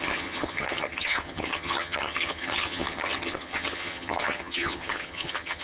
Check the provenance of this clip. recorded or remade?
remade